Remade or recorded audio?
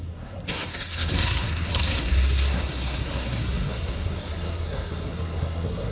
remade